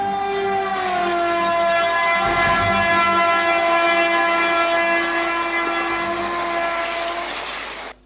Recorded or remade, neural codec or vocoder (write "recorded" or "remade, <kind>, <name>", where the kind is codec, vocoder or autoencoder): recorded